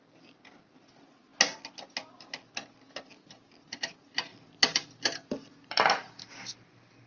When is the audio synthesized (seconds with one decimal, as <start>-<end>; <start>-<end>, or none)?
4.3-7.1